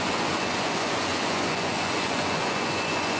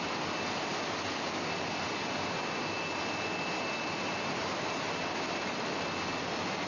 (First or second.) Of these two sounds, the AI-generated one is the first